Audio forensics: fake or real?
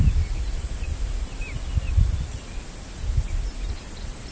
real